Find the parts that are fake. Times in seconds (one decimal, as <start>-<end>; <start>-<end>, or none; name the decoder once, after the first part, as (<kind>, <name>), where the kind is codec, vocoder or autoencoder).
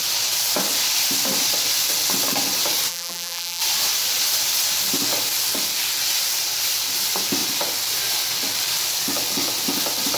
2.9-3.6 (vocoder, BigVGAN v2)